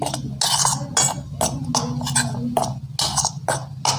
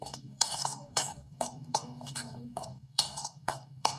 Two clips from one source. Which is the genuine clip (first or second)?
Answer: first